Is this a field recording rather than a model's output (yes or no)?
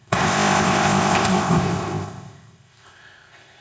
no